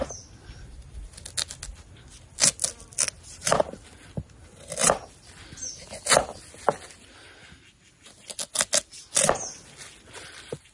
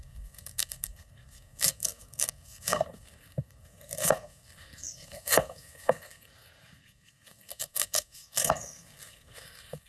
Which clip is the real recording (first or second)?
first